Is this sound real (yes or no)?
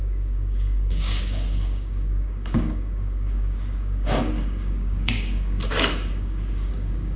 no